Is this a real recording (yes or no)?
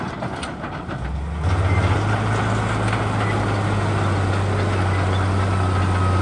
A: yes